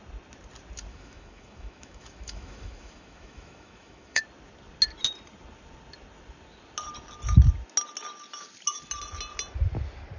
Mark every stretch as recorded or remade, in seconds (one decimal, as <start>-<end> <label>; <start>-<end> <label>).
0.0-0.9 recorded; 0.9-4.2 remade; 4.2-10.2 recorded